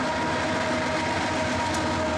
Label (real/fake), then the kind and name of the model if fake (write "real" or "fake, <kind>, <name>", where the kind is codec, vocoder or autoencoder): real